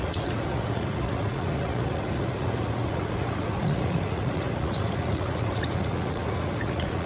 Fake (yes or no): yes